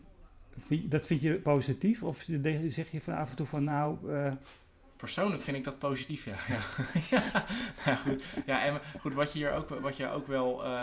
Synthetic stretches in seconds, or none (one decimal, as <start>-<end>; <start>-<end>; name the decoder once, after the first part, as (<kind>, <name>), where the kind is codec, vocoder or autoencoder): 3.3-6.1 (vocoder, Vocos)